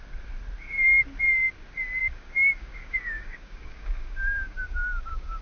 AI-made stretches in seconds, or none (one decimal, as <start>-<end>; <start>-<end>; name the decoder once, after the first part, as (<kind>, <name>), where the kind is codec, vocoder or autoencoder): 2.0-5.4 (codec, DAC)